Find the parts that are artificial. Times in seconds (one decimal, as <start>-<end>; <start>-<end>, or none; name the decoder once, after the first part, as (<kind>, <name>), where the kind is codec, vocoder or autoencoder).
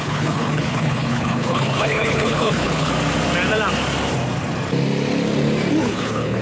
0.0-2.9 (codec, HILCodec); 5.8-6.4